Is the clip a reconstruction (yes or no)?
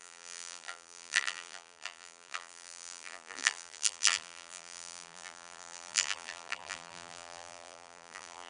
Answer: yes